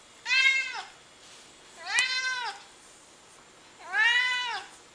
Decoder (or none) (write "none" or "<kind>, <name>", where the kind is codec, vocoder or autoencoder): none